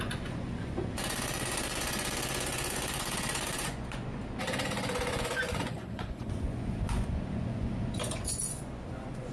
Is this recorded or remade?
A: remade